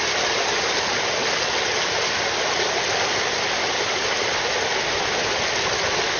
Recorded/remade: recorded